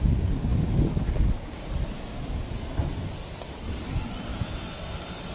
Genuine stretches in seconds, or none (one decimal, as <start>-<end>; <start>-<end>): 0.0-5.3